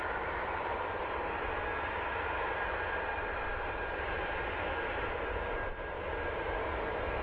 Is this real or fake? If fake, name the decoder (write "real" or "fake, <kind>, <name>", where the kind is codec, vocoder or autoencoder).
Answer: real